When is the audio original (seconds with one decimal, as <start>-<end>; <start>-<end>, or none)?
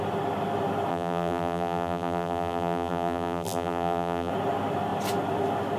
0.0-0.9; 4.3-5.8